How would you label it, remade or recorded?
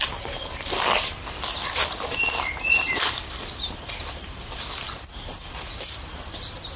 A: remade